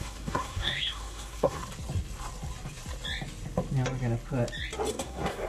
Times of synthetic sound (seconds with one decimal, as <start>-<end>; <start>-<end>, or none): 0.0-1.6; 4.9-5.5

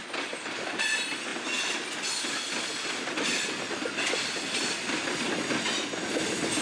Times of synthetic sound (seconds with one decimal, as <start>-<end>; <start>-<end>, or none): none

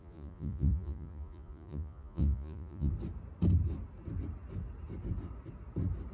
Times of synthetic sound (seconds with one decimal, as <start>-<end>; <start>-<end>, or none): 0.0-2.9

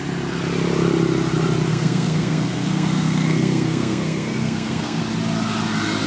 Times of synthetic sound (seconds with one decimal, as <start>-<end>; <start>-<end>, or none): 1.7-5.0